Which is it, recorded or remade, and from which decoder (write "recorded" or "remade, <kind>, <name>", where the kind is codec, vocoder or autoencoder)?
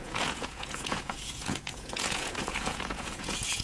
remade, vocoder, Vocos